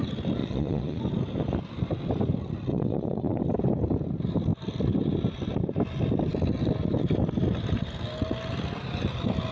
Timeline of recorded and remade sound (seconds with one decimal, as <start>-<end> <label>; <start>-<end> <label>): 0.0-0.4 recorded; 0.4-1.0 remade; 1.0-2.7 recorded; 2.7-3.4 remade; 3.4-9.5 recorded